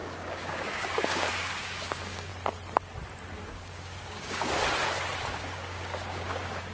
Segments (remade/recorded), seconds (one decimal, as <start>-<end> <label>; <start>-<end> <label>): 0.0-2.3 remade; 2.3-3.4 recorded; 3.4-4.6 remade; 4.6-5.2 recorded; 5.2-6.7 remade